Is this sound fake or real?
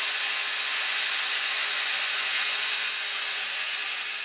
fake